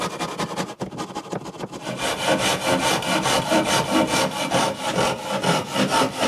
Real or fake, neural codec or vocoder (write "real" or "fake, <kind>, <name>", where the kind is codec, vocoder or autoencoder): real